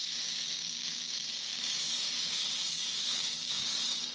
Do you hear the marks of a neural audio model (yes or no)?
yes